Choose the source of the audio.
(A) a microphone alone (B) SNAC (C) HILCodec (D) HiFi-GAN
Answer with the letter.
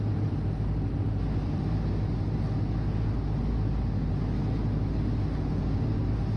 A